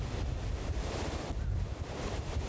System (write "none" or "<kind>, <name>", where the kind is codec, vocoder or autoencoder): none